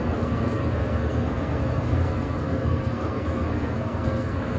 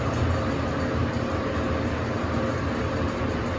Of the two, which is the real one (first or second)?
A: second